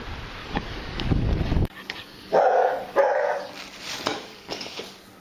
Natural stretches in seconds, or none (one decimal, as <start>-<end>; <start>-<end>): 0.0-0.4; 3.5-4.1; 4.8-5.2